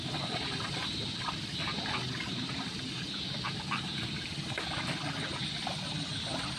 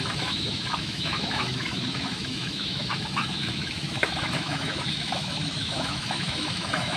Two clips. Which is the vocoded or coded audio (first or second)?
second